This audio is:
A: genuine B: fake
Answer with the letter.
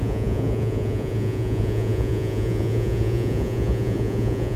B